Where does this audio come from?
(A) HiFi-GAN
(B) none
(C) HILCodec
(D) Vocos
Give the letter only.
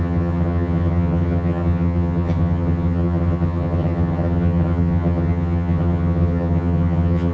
A